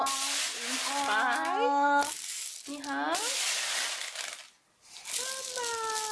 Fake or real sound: real